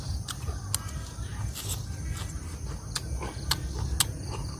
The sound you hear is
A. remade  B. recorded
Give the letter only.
B